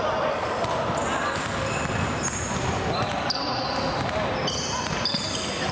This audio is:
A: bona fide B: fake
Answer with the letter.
A